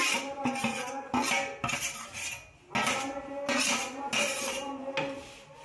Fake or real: real